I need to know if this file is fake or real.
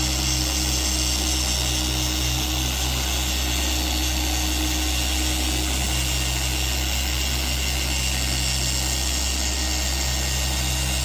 real